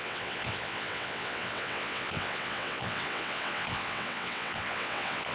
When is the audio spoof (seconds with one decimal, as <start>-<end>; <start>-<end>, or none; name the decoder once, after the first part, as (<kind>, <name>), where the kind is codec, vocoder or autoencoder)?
0.0-5.3 (vocoder, WaveNeXt)